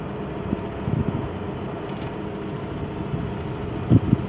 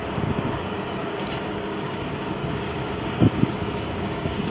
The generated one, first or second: second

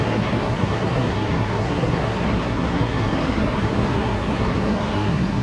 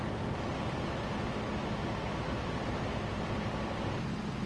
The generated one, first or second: first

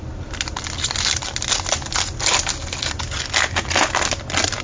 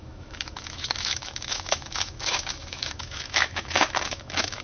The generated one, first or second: second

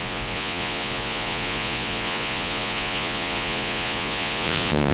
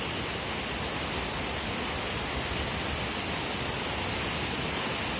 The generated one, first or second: first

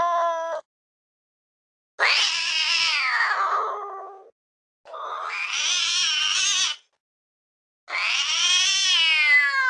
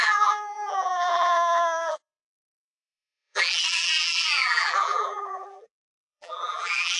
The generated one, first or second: second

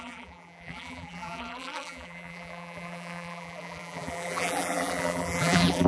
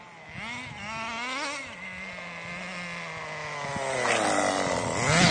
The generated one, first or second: first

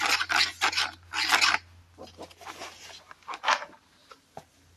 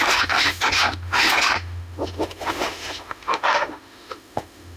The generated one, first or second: second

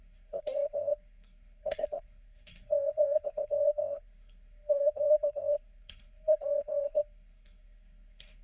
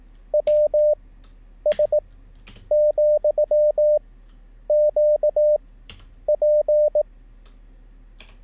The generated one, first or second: first